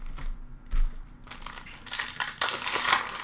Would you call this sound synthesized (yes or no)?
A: no